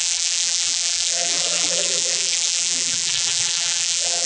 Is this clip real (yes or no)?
no